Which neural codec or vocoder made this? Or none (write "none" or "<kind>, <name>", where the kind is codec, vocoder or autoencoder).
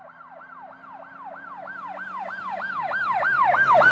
none